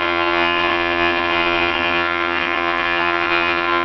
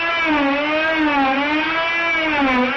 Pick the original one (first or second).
second